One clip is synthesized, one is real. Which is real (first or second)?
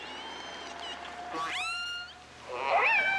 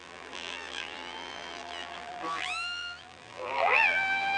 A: first